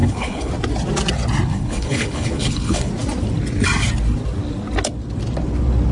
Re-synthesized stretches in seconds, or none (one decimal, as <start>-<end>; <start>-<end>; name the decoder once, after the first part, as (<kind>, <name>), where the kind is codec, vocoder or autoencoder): 0.0-0.5 (codec, HILCodec); 1.5-2.9